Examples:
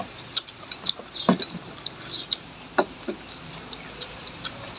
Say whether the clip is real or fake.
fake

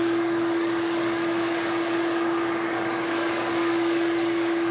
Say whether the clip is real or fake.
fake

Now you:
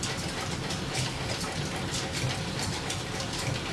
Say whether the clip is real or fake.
real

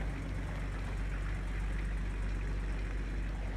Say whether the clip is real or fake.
real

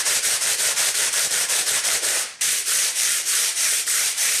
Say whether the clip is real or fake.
fake